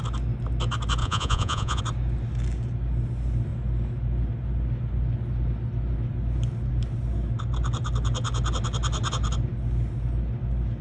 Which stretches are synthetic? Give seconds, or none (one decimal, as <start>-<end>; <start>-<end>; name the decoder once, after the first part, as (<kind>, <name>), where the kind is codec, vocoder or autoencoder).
1.0-1.8 (vocoder, Vocos)